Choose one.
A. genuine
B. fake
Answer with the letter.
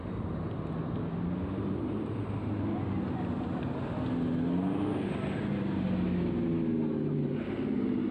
A